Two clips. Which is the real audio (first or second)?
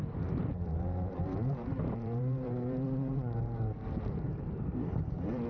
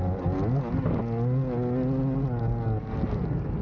second